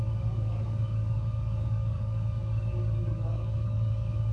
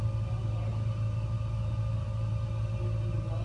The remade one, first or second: first